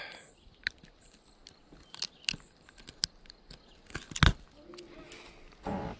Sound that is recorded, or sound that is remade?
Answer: recorded